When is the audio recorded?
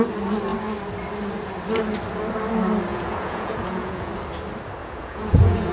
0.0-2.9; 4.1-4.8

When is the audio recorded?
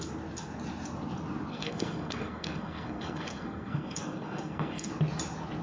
0.0-1.5; 4.9-5.6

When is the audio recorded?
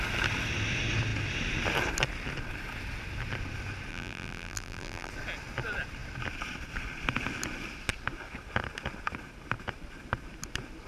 0.0-3.9; 5.1-10.9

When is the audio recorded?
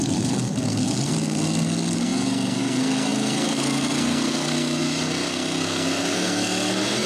none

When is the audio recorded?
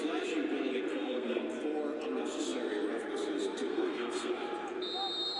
0.0-0.9; 1.4-3.7; 4.3-5.4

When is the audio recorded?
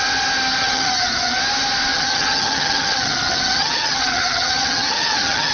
0.0-0.6; 1.4-1.9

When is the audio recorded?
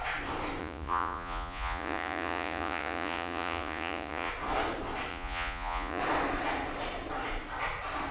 0.0-0.6; 4.3-5.1; 6.0-8.1